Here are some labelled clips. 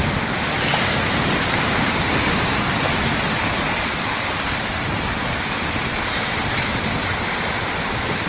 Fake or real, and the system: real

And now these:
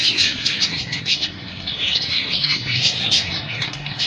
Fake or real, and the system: fake, codec, SNAC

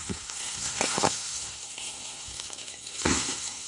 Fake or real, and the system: fake, codec, SNAC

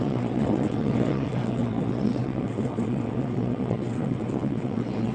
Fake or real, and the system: fake, vocoder, WaveNeXt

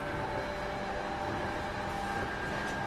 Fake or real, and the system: real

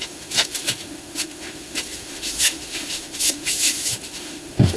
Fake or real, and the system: fake, autoencoder, DAC-VAE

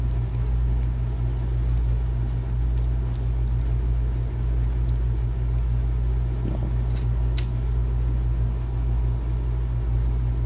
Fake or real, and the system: real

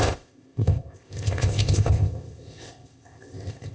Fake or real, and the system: fake, codec, ZipCodec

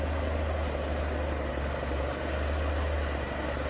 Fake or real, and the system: real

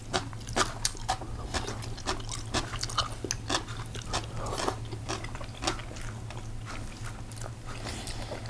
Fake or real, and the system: real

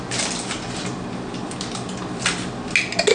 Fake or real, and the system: real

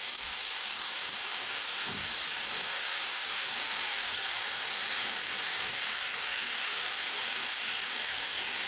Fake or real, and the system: fake, codec, DAC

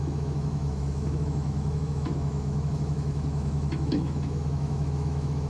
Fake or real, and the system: fake, autoencoder, DAC-VAE